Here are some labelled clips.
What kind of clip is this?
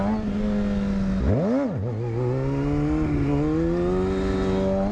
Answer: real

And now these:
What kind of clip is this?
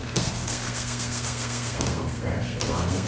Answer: fake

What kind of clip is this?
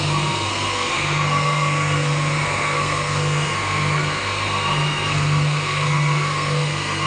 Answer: fake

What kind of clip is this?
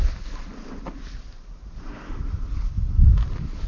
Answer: real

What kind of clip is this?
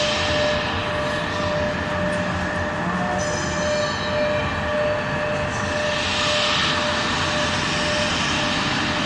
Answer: real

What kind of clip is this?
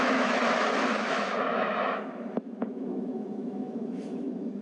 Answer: fake